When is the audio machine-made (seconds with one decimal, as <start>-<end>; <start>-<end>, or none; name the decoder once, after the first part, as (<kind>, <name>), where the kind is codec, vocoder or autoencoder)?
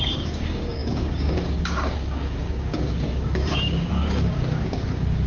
0.0-5.3 (codec, DAC)